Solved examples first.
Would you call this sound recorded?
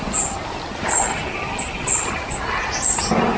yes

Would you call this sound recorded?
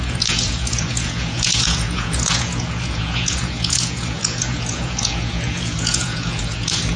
no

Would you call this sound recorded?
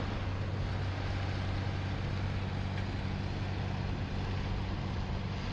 yes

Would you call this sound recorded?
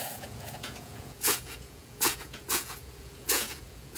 no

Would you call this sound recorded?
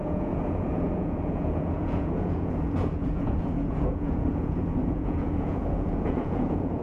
no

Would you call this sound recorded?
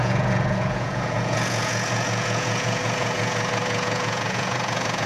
no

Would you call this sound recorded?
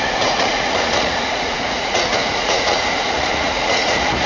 no